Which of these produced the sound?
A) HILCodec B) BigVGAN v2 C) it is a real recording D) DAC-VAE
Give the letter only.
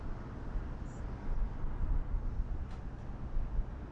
C